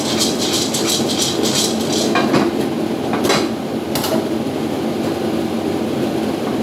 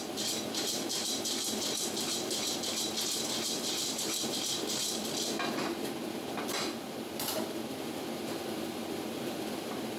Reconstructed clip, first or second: second